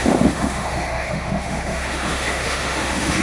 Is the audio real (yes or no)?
no